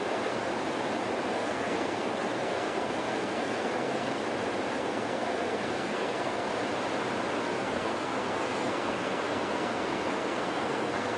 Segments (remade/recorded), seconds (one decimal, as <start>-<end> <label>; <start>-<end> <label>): 0.0-0.5 remade; 0.5-1.3 recorded; 1.3-4.2 remade; 4.2-4.7 recorded; 4.7-6.5 remade; 6.5-7.4 recorded; 7.4-11.2 remade